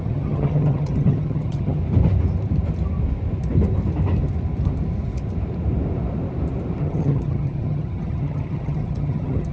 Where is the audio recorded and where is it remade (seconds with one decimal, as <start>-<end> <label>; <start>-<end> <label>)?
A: 0.0-1.8 remade; 1.8-6.8 recorded; 6.8-9.5 remade